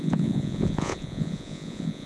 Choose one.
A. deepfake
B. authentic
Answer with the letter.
A